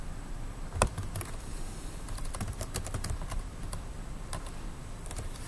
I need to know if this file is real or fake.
fake